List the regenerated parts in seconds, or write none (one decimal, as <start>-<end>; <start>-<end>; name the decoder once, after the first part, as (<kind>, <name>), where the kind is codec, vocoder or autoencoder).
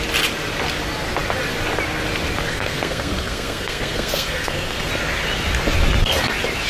2.5-4.9 (codec, SNAC)